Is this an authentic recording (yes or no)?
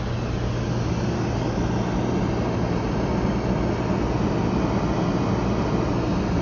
yes